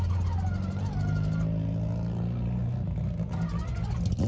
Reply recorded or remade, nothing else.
recorded